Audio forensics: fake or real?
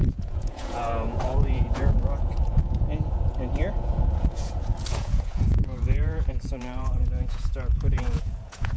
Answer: fake